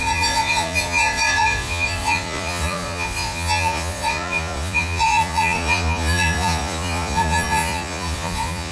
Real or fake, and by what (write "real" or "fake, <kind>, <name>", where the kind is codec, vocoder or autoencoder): fake, vocoder, Vocos